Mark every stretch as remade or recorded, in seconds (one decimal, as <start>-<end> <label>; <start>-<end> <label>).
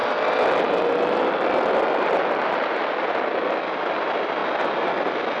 0.0-5.4 recorded